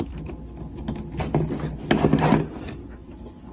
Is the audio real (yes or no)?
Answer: yes